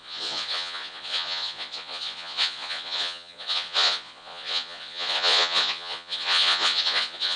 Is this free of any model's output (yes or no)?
no